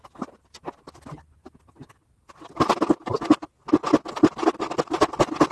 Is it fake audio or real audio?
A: real